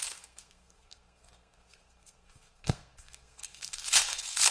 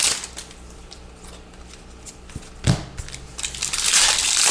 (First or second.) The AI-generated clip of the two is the first